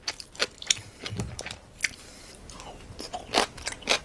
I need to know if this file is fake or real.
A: real